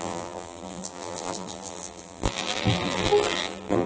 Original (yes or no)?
no